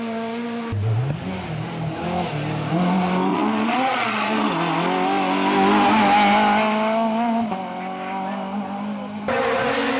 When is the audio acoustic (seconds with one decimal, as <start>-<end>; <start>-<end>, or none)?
0.0-3.3; 4.5-10.0